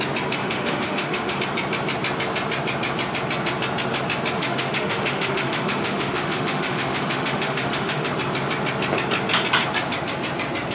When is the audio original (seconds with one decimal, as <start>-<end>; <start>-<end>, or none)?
0.0-0.4; 1.4-4.4; 8.1-10.7